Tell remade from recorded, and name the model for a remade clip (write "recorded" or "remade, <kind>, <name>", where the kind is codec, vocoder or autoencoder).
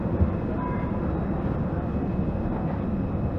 recorded